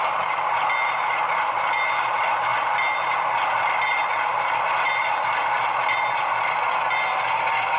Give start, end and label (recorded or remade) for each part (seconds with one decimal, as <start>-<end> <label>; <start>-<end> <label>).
0.0-7.8 recorded